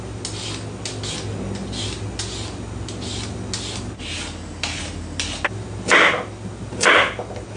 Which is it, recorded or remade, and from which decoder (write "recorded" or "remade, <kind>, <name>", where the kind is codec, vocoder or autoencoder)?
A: recorded